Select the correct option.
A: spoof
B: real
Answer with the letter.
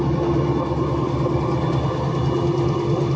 B